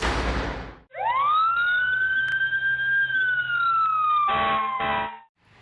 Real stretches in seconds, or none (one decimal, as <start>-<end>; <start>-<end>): 0.0-5.6